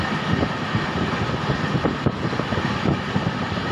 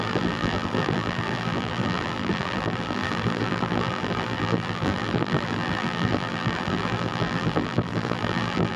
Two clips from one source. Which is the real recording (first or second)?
first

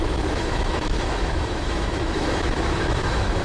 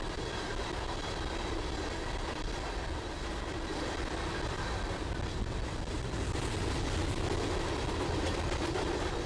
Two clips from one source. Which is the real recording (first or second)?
second